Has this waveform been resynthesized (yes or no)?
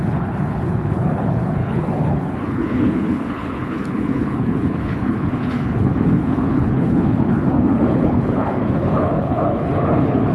yes